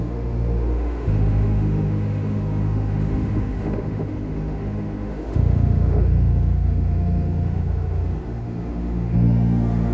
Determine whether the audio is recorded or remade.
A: remade